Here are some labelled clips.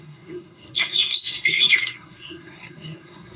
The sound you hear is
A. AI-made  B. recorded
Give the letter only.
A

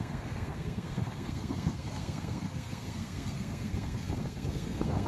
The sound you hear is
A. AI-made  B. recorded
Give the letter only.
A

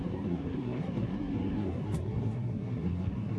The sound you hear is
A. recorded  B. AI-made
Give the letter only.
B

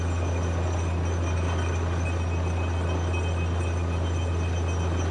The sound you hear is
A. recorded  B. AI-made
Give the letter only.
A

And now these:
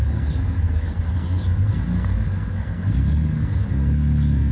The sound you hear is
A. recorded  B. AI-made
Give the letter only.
B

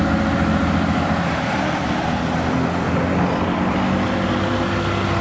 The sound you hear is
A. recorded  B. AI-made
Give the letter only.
A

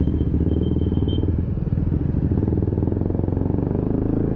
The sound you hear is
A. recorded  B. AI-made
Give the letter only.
A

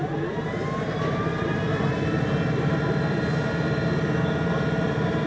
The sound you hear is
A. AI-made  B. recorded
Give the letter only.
B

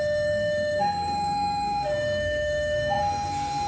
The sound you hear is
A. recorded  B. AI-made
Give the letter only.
B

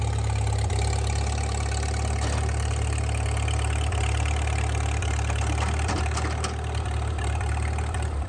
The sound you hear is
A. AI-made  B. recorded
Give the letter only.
B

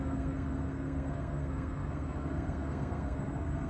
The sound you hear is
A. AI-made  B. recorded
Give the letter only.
A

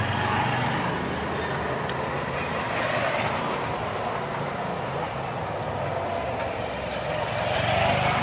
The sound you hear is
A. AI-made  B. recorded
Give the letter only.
B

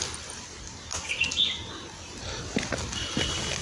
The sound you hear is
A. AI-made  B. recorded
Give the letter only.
B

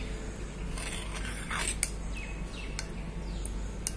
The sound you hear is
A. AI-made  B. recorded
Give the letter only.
B